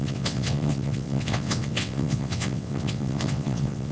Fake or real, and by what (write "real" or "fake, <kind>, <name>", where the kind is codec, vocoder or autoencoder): fake, vocoder, WaveNeXt